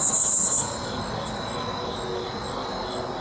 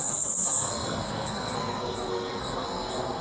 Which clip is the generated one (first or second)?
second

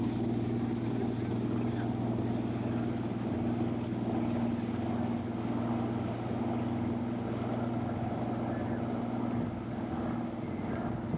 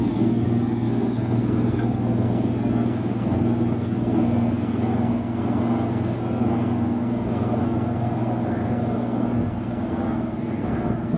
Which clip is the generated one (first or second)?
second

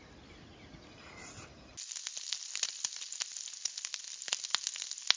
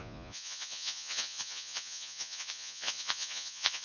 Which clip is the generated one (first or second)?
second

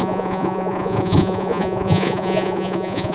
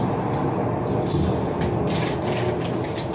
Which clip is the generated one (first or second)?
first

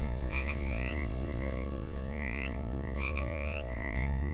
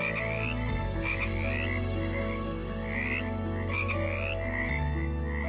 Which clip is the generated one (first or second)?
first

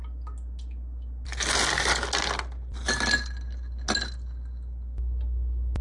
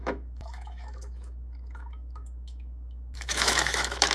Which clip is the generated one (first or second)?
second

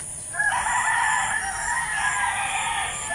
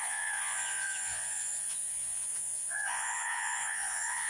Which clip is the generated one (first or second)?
second